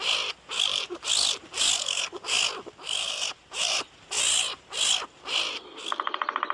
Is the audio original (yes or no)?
yes